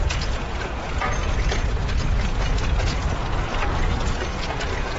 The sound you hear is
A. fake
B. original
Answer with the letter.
A